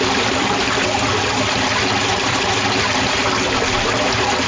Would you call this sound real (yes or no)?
yes